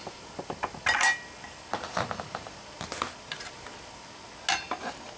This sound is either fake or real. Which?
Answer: real